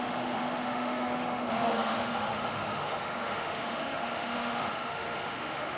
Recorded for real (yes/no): no